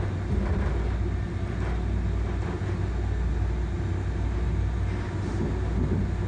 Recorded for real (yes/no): yes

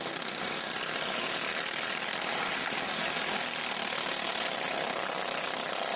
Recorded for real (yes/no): yes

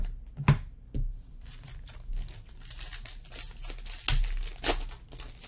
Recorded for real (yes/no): yes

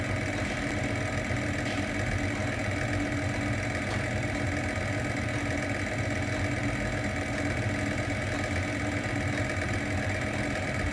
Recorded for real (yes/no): yes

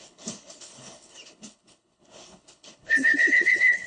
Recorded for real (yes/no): no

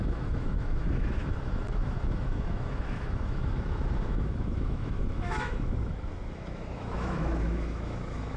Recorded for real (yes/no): no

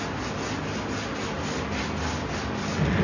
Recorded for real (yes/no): yes